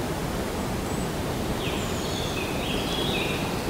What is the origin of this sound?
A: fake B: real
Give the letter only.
B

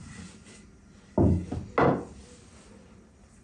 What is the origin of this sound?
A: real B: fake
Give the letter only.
A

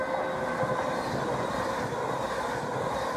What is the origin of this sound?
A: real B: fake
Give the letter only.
A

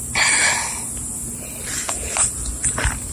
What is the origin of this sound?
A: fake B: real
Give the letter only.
B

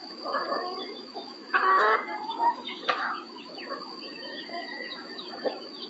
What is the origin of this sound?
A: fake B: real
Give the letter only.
A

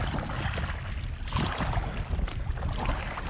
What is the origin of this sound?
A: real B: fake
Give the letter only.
A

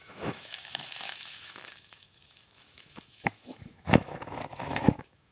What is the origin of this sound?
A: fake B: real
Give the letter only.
A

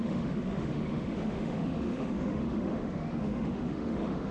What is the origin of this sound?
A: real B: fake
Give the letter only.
B